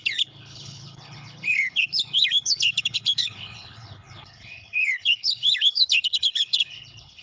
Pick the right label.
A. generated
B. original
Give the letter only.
A